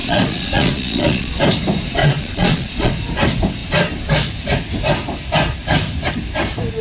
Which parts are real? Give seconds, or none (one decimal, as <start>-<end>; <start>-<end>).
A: 1.4-2.0; 2.9-6.8